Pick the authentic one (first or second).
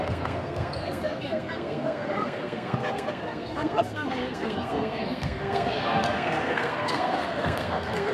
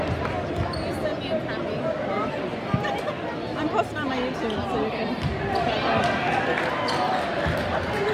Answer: second